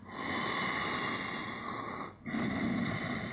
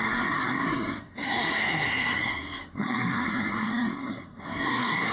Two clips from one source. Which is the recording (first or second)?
first